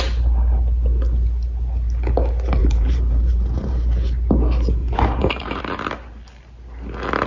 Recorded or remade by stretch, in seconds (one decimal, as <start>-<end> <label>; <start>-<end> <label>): 0.0-2.6 recorded; 2.6-3.8 remade; 3.8-4.8 recorded; 4.8-5.6 remade; 5.6-7.3 recorded